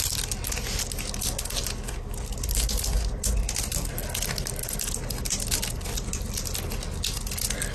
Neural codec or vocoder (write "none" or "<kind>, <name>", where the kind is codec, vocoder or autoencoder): none